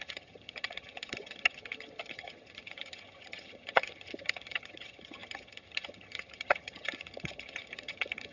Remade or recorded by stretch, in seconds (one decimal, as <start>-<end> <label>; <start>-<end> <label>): 0.0-8.3 remade